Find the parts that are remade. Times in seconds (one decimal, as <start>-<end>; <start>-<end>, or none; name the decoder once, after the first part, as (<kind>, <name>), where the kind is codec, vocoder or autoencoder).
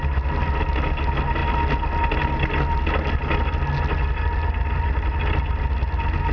none